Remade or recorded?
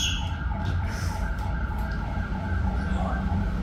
remade